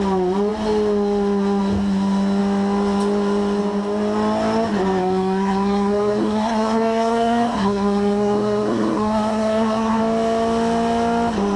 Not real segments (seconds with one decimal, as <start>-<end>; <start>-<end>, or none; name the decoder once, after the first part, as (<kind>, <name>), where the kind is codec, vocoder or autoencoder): 5.0-10.0 (codec, SNAC)